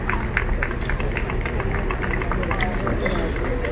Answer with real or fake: real